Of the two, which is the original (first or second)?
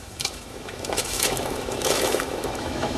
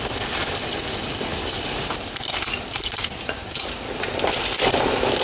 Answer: second